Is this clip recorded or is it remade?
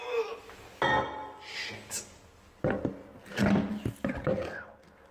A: recorded